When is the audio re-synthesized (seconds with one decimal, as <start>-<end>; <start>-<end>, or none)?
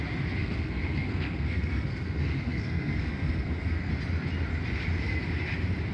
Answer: 0.4-3.9